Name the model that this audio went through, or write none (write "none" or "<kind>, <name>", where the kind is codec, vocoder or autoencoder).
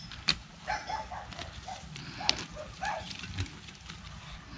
vocoder, BigVGAN v2